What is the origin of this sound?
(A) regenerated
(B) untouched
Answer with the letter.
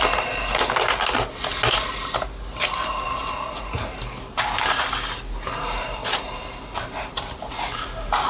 B